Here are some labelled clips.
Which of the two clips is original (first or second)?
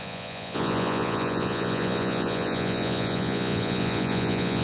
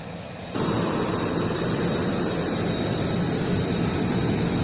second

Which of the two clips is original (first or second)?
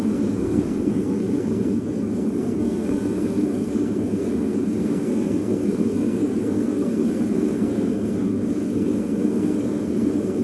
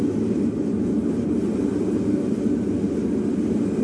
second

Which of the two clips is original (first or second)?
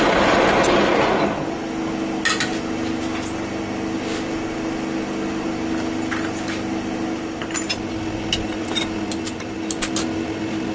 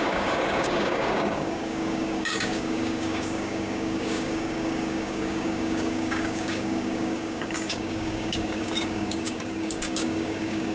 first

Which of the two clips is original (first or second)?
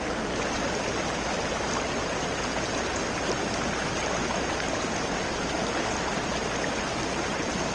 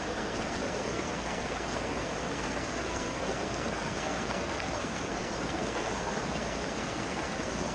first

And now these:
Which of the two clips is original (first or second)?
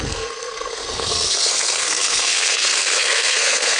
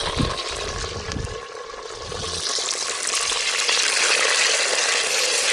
second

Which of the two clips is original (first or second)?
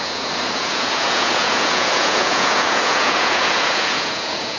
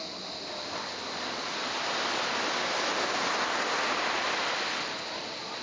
second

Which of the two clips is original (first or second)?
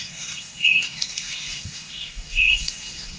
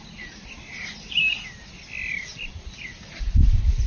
second